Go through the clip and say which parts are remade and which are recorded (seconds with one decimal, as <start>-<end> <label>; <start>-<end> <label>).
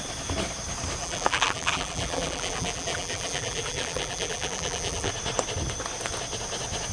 0.0-1.0 recorded; 1.0-5.1 remade; 5.1-6.9 recorded